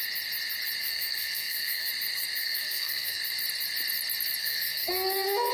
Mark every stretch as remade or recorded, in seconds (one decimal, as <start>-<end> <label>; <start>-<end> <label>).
0.0-0.8 recorded; 0.8-1.9 remade; 1.9-2.4 recorded; 2.4-3.2 remade; 3.2-4.4 recorded; 4.4-5.5 remade